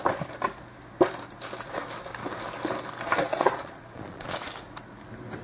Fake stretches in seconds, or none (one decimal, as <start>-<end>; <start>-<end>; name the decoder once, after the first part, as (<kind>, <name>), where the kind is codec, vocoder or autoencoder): 3.3-4.5 (vocoder, Vocos)